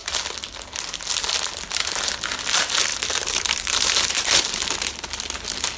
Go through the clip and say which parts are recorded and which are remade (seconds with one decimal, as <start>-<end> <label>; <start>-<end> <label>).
0.0-2.9 recorded; 2.9-4.6 remade; 4.6-5.8 recorded